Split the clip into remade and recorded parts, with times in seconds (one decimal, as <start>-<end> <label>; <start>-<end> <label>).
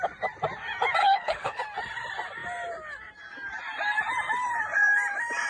0.0-1.0 recorded; 1.0-1.6 remade; 1.6-5.5 recorded